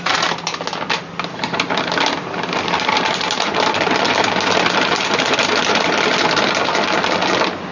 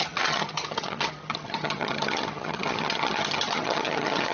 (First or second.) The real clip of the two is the first